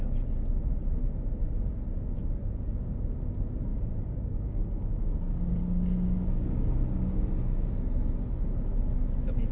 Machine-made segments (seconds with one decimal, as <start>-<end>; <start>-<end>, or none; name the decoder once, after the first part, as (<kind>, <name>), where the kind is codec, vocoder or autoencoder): 3.7-6.7 (codec, DAC)